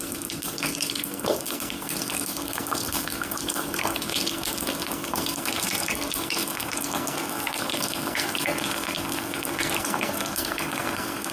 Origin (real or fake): fake